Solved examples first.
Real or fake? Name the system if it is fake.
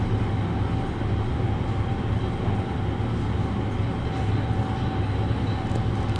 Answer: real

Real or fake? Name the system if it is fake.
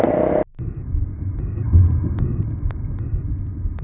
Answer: real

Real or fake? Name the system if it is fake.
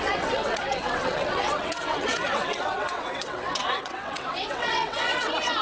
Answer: fake, vocoder, WaveNeXt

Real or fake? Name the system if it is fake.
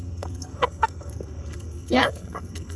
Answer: fake, codec, SNAC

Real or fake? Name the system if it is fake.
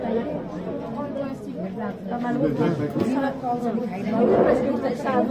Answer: real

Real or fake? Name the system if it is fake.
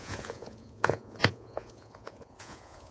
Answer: fake, vocoder, Vocos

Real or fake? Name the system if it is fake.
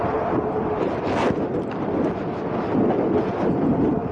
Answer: real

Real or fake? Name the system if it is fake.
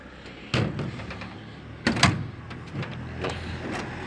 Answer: real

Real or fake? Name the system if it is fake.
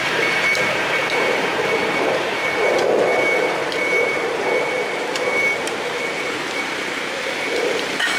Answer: fake, vocoder, BigVGAN v2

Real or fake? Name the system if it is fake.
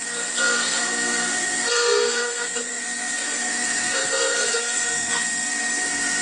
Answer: fake, codec, SNAC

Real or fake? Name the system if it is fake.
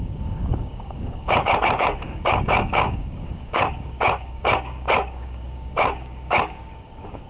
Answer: fake, codec, DAC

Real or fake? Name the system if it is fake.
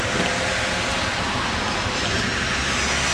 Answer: real